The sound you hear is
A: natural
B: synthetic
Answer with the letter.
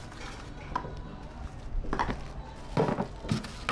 A